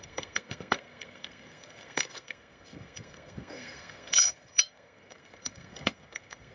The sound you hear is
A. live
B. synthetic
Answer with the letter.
B